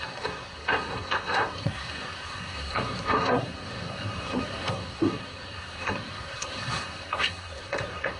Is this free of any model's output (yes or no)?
no